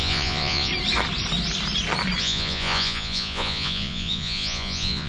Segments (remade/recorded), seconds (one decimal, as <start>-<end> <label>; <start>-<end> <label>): 0.0-0.7 remade; 0.7-2.2 recorded; 2.2-5.1 remade